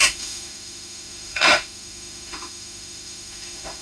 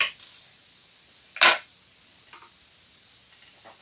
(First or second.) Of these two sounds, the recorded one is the second